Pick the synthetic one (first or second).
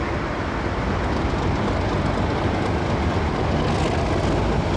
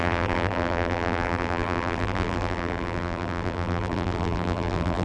second